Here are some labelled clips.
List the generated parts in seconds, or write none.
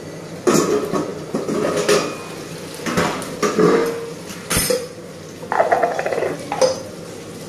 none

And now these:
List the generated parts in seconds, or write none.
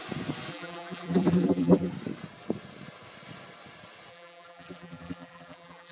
0.5-1.9; 4.1-5.9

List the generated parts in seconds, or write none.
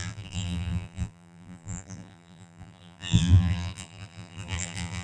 0.0-5.0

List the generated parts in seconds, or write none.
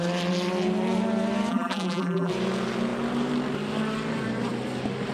1.5-2.3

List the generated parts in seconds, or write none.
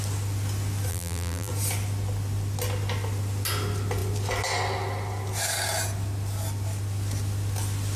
0.9-1.5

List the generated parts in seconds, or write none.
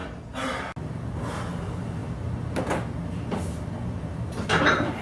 none